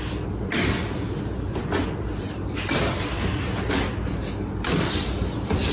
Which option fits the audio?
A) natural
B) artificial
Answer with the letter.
A